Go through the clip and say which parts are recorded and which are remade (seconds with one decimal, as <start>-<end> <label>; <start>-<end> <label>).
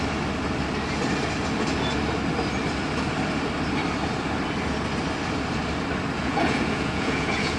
0.0-6.2 recorded; 6.2-7.6 remade